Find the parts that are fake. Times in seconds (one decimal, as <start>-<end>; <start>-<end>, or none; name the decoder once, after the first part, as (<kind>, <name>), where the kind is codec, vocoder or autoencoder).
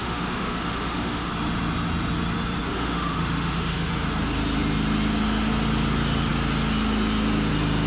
0.0-1.3 (autoencoder, DAC-VAE); 2.7-3.9